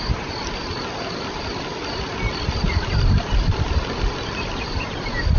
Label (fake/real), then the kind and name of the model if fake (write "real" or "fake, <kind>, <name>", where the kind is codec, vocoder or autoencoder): real